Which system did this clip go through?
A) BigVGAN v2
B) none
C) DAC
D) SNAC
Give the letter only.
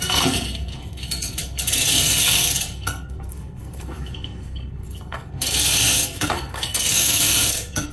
D